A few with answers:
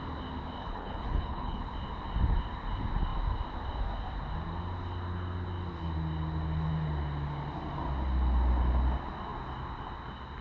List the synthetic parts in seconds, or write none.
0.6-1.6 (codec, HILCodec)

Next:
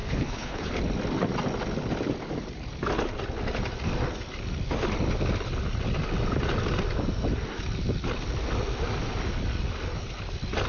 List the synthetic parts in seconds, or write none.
0.0-0.7 (codec, HILCodec)